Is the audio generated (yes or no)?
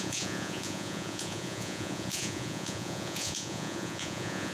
yes